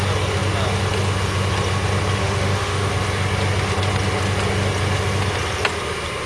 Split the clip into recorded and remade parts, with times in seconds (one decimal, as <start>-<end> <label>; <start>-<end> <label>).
0.0-2.2 recorded; 2.2-2.9 remade; 2.9-6.3 recorded